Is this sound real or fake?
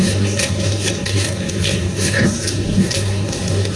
fake